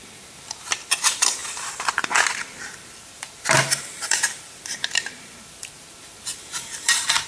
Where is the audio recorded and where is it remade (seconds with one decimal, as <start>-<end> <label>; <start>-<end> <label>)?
0.0-7.3 remade